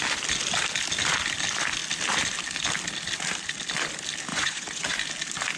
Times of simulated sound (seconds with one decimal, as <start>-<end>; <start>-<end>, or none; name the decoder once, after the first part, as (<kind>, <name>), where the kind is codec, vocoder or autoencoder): 4.3-5.0 (vocoder, Vocos)